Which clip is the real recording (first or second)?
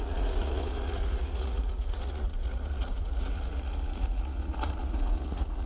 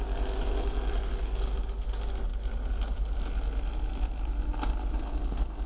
second